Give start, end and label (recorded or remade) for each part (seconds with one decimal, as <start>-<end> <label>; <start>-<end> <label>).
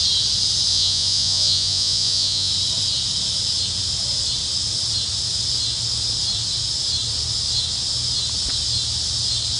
0.0-0.7 recorded; 0.7-2.5 remade; 2.5-9.6 recorded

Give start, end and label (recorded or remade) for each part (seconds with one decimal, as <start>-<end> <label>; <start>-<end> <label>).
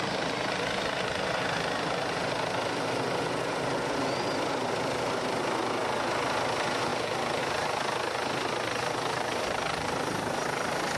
0.0-11.0 recorded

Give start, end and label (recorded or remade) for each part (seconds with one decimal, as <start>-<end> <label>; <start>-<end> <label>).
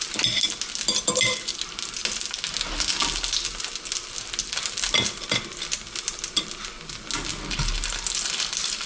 0.0-8.9 recorded